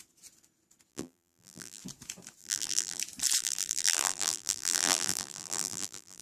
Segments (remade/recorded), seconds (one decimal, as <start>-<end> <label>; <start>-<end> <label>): 0.0-0.9 recorded; 0.9-1.8 remade; 1.8-2.4 recorded; 2.4-3.0 remade; 3.0-3.4 recorded; 3.4-6.2 remade